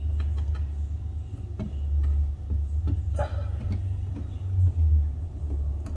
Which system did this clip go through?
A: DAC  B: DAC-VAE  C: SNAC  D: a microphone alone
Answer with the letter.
D